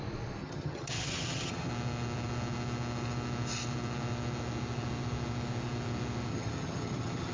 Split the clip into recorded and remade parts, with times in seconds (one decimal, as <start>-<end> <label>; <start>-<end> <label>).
0.0-0.4 recorded; 0.4-1.7 remade; 1.7-6.3 recorded; 6.3-7.3 remade